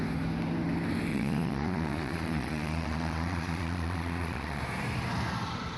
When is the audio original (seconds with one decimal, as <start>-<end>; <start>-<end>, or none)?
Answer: 0.0-1.1; 4.6-5.8

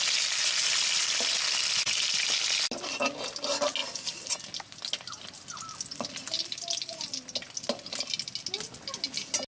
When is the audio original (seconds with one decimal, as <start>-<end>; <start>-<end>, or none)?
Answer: 0.0-9.5